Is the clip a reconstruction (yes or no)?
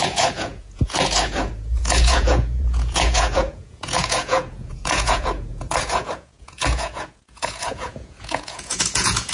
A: yes